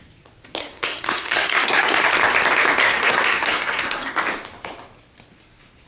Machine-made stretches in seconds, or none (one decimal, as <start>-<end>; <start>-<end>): 0.6-2.1; 2.8-4.1